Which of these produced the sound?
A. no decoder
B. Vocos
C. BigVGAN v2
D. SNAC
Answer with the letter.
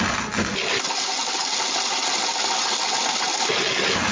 A